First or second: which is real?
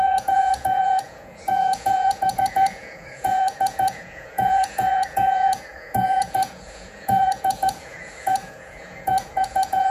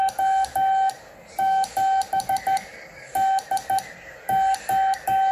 second